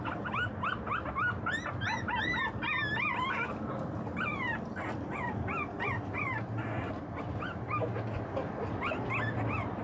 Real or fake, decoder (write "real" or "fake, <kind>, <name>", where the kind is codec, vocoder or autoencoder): real